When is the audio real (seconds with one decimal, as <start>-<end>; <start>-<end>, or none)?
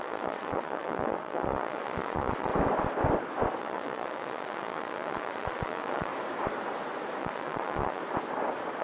2.5-3.6; 6.1-7.2; 8.0-8.8